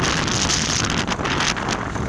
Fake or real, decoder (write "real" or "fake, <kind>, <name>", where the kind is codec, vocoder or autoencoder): real